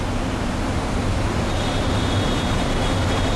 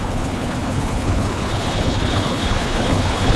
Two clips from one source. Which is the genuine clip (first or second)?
first